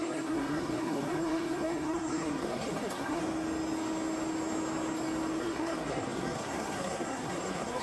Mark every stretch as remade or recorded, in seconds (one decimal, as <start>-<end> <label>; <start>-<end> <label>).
0.0-3.2 remade; 3.2-5.4 recorded; 5.4-7.8 remade